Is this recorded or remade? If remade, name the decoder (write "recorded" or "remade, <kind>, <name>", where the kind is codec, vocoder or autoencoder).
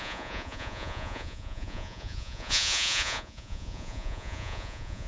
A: remade, vocoder, Vocos